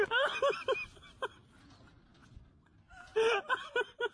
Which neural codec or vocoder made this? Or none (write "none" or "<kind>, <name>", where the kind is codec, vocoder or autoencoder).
none